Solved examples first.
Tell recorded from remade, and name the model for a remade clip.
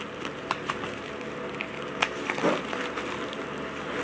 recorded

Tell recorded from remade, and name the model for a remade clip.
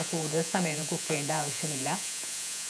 remade, vocoder, Vocos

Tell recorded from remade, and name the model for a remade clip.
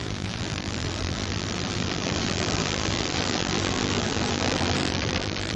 remade, vocoder, BigVGAN v2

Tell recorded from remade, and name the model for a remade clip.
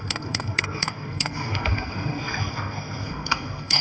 remade, codec, SNAC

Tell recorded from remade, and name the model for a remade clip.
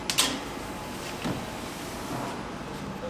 recorded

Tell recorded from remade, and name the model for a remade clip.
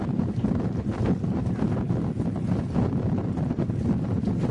recorded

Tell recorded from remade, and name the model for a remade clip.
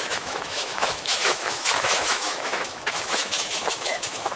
remade, autoencoder, DAC-VAE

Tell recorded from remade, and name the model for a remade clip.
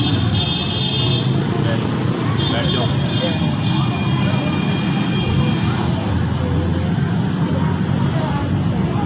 recorded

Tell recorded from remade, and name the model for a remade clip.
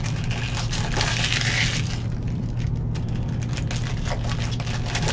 recorded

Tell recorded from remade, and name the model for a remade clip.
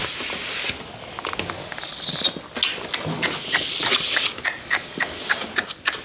recorded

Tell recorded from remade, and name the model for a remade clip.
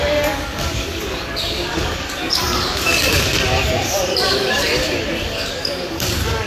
remade, codec, DAC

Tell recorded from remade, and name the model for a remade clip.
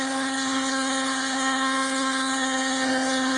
remade, codec, SNAC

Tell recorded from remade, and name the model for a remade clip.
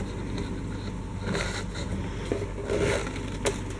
recorded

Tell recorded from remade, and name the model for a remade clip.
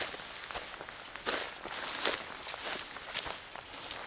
recorded